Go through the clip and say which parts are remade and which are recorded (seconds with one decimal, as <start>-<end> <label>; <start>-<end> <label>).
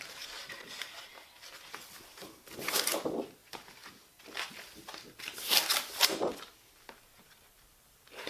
0.0-3.4 recorded; 3.4-8.3 remade